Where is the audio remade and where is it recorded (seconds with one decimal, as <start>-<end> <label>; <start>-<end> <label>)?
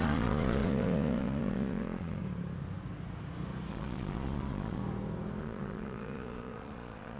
0.0-2.2 remade; 2.2-3.7 recorded; 3.7-4.8 remade; 4.8-5.4 recorded; 5.4-7.2 remade